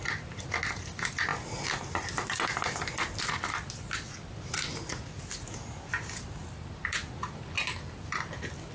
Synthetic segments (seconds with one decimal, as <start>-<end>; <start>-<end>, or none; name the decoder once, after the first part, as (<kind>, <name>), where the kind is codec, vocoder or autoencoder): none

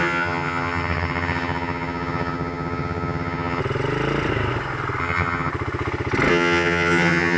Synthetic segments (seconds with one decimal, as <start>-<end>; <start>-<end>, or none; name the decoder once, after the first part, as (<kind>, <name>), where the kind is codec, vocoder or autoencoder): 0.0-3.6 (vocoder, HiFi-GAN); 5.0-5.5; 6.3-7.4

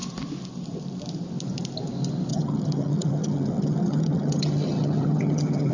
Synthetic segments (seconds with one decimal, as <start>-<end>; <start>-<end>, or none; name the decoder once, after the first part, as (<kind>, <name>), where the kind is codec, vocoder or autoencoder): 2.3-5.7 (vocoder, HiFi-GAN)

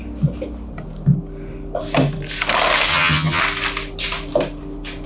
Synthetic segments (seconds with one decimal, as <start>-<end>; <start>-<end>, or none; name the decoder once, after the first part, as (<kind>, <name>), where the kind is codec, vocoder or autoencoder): 2.9-3.4 (vocoder, HiFi-GAN)